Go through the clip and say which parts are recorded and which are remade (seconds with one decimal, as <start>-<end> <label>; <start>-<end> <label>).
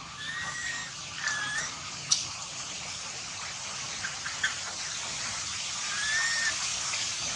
0.0-0.8 remade; 0.8-1.6 recorded; 1.6-2.2 remade; 2.2-6.5 recorded; 6.5-7.4 remade